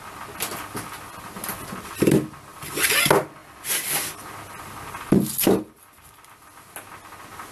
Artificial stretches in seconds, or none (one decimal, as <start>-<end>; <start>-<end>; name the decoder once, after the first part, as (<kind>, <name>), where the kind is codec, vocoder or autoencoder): 2.5-3.0 (vocoder, BigVGAN v2)